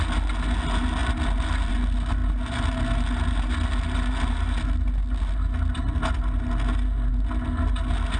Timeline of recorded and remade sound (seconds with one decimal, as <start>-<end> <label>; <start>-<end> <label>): 0.0-8.2 recorded